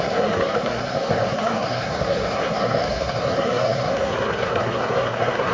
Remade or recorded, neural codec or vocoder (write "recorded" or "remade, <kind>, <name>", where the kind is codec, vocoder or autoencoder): remade, codec, SNAC